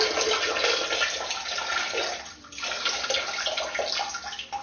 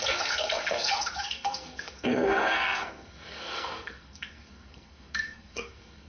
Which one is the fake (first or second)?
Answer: second